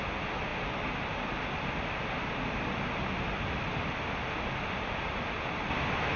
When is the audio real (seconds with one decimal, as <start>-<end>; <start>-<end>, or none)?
0.0-6.2